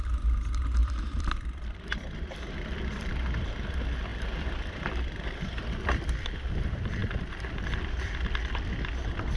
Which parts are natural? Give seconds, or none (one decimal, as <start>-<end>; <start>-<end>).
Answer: 0.0-0.8; 3.5-4.1; 6.5-9.4